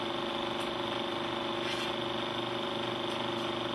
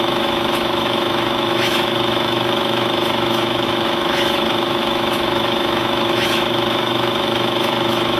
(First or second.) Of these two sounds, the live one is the first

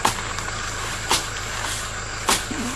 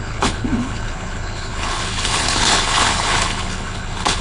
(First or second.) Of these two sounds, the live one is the first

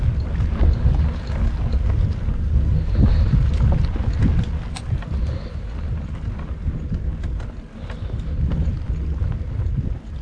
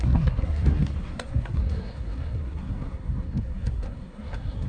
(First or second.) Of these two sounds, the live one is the first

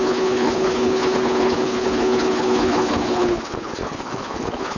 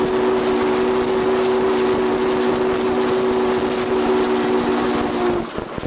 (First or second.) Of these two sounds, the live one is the second